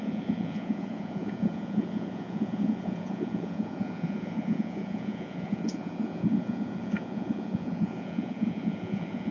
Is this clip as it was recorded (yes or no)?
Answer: no